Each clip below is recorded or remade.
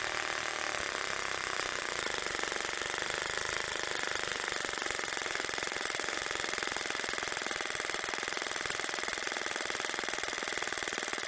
remade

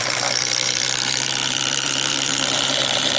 remade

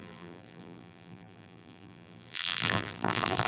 remade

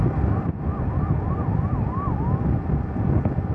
recorded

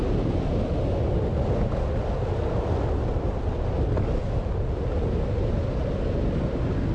recorded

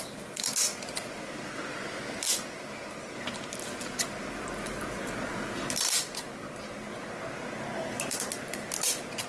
recorded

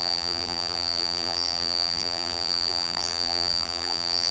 remade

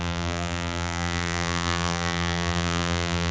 remade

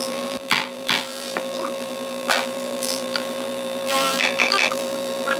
remade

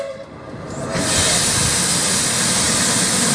remade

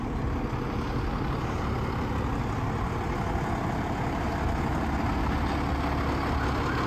recorded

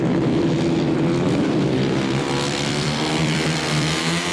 remade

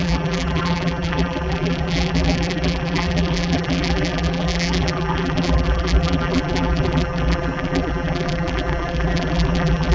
remade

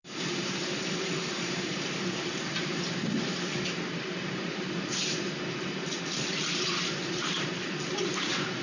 remade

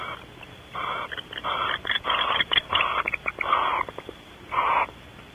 recorded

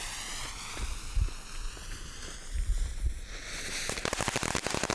recorded